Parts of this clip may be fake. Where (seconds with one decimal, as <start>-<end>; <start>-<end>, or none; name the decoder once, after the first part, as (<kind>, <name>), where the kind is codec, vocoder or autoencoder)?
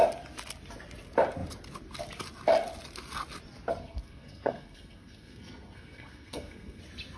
3.8-6.8 (codec, SNAC)